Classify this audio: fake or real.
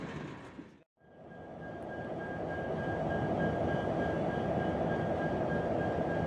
real